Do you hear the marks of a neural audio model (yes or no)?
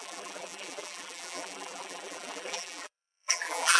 yes